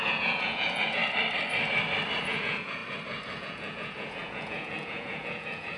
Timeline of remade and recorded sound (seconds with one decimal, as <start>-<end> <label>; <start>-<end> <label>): 0.0-1.0 remade; 1.0-2.2 recorded; 2.2-2.8 remade; 2.8-3.4 recorded; 3.4-5.8 remade

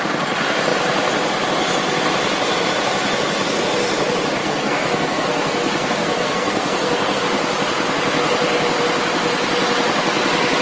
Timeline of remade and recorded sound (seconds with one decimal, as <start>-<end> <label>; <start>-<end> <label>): 0.0-4.4 recorded; 4.4-7.2 remade; 7.2-10.6 recorded

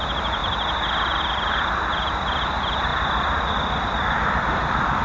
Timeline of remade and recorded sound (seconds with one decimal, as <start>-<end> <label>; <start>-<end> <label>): 0.0-5.0 recorded

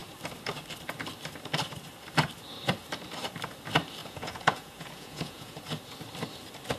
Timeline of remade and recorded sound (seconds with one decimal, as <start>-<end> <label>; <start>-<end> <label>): 0.0-4.0 recorded; 4.0-5.6 remade; 5.6-6.8 recorded

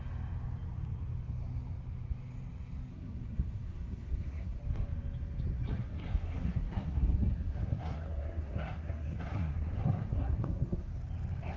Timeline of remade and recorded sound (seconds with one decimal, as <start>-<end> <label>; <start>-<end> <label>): 0.0-2.9 recorded; 2.9-4.6 remade; 4.6-5.8 recorded; 5.8-10.9 remade; 10.9-11.6 recorded

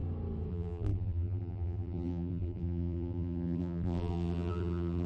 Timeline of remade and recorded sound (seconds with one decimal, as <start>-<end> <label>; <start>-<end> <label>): 0.0-0.5 recorded; 0.5-5.1 remade

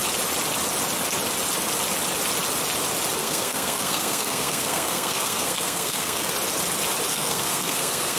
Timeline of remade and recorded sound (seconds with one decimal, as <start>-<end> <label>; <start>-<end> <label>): 0.0-3.2 recorded; 3.2-6.3 remade; 6.3-7.1 recorded; 7.1-8.2 remade

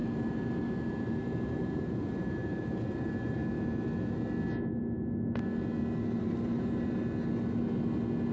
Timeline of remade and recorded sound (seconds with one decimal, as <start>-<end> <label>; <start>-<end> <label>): 0.0-3.4 remade; 3.4-6.2 recorded; 6.2-7.0 remade; 7.0-8.3 recorded